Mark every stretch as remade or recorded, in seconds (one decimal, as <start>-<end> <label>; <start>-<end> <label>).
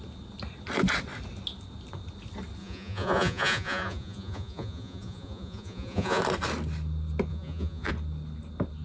0.0-2.6 recorded; 2.6-6.2 remade; 6.2-7.3 recorded; 7.3-7.9 remade; 7.9-8.8 recorded